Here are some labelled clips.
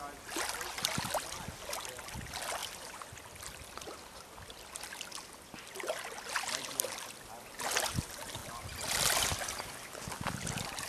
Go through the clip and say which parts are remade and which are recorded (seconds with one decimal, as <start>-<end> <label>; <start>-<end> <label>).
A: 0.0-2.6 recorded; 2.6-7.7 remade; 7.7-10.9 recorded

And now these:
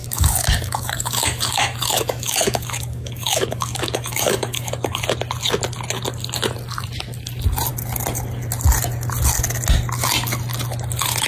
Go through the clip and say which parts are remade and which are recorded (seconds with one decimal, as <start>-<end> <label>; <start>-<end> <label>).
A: 0.0-5.0 remade; 5.0-11.3 recorded

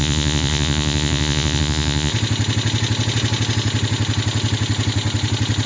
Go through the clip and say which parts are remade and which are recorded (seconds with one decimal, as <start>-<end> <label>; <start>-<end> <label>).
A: 0.0-2.1 remade; 2.1-5.7 recorded

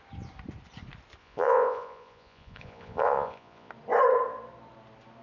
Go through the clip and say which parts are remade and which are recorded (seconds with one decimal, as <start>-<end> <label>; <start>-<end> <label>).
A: 0.0-1.2 recorded; 1.2-3.7 remade; 3.7-5.2 recorded

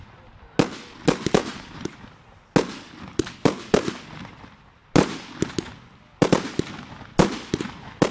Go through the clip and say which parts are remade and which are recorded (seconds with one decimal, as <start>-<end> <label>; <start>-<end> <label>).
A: 0.0-1.5 recorded; 1.5-2.1 remade; 2.1-8.1 recorded

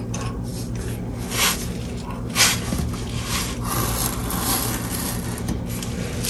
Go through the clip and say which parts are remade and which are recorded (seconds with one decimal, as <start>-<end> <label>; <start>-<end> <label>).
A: 0.0-6.3 recorded